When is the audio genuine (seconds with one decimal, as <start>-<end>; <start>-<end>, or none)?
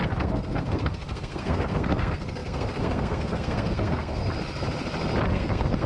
4.2-5.3